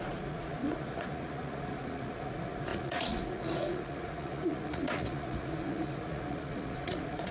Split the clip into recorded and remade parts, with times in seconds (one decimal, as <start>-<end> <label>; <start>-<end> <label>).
0.0-7.3 remade